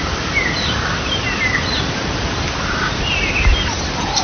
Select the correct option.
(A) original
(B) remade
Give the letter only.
A